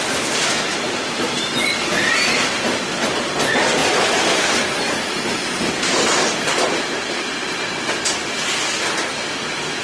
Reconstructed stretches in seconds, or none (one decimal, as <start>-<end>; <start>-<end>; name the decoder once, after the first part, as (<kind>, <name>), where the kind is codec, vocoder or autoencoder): none